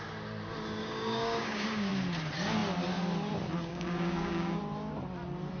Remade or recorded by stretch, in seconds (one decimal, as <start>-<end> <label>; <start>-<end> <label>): 0.0-0.8 recorded; 0.8-1.9 remade; 1.9-3.7 recorded; 3.7-4.6 remade; 4.6-5.6 recorded